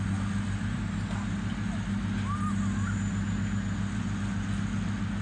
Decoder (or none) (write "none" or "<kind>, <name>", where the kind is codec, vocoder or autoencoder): none